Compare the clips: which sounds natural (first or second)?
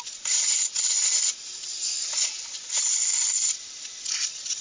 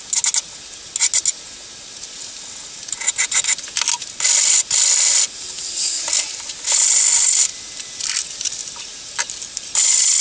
second